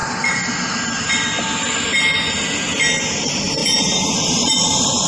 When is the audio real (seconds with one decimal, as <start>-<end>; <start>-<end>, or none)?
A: 0.0-3.1